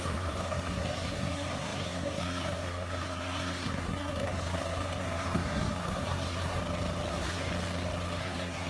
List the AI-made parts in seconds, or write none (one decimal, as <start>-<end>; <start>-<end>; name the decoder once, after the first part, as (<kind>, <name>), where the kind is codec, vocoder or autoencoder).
0.0-6.6 (codec, SNAC); 7.1-7.5; 8.2-8.7

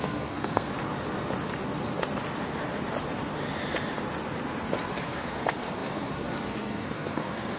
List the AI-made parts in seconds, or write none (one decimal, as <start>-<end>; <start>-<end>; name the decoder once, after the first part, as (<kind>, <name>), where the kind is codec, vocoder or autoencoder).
0.0-0.7 (codec, SNAC); 4.9-7.6

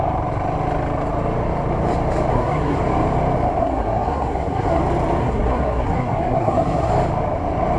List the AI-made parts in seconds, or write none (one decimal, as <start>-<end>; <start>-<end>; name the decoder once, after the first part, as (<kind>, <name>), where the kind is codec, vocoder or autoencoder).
2.3-2.8 (codec, SNAC); 3.6-4.8; 5.2-6.9

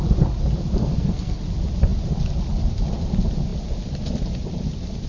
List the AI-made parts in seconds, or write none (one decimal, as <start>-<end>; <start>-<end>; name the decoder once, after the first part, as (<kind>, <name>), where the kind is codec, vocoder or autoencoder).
0.8-1.4 (codec, SNAC)